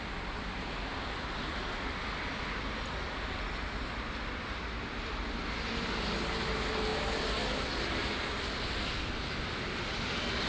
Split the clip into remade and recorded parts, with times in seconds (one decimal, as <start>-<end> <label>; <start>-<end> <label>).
0.0-10.5 recorded